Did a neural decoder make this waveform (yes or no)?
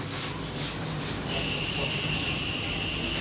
no